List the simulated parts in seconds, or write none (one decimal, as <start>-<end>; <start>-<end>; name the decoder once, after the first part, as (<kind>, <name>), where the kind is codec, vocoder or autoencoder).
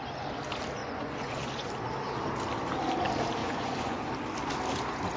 0.8-1.7 (vocoder, Vocos); 3.4-4.1